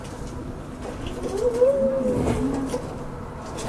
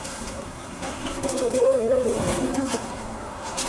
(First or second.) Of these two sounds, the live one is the first